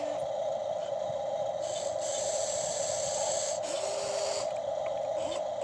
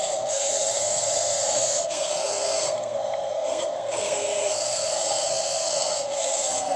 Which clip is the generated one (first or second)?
second